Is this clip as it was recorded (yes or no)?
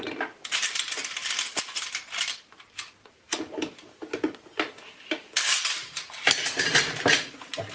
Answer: yes